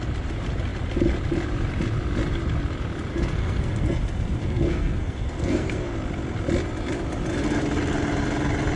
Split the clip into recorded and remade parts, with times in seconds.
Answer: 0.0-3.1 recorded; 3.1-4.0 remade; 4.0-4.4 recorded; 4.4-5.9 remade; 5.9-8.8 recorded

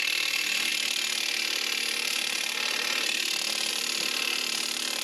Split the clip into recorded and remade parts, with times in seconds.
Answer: 0.0-5.0 recorded

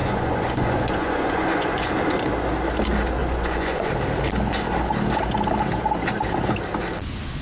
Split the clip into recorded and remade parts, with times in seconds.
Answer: 0.0-1.9 remade; 1.9-3.2 recorded; 3.2-3.9 remade; 3.9-7.4 recorded